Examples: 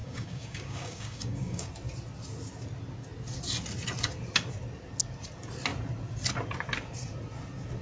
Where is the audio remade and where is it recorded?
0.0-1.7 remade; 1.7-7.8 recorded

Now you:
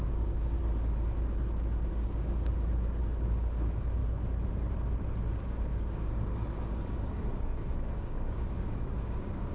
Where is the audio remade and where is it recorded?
0.0-0.6 remade; 0.6-1.9 recorded; 1.9-4.0 remade; 4.0-5.3 recorded; 5.3-9.5 remade

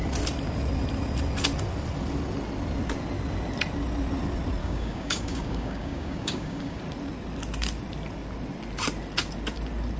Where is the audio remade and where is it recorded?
0.0-4.6 recorded; 4.6-6.8 remade; 6.8-10.0 recorded

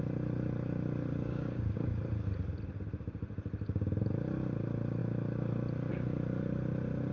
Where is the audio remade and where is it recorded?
0.0-1.1 recorded; 1.1-2.0 remade; 2.0-7.1 recorded

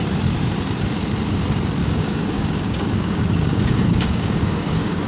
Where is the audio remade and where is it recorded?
0.0-1.8 recorded; 1.8-5.1 remade

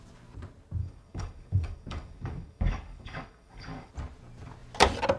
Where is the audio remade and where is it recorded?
0.0-0.8 recorded; 0.8-3.9 remade; 3.9-5.2 recorded

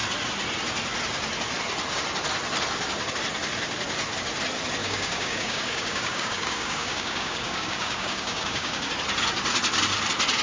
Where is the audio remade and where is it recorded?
0.0-4.8 recorded; 4.8-8.9 remade; 8.9-10.4 recorded

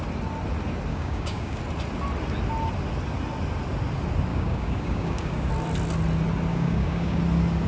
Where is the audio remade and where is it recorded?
0.0-0.9 recorded; 0.9-1.6 remade; 1.6-4.3 recorded; 4.3-5.5 remade; 5.5-6.5 recorded; 6.5-7.2 remade; 7.2-7.7 recorded